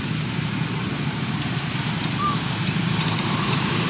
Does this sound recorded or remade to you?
remade